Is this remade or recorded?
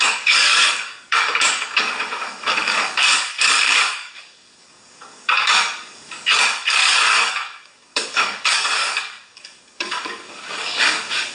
remade